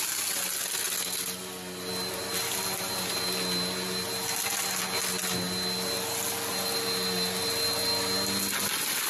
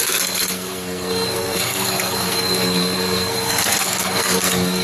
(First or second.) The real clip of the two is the first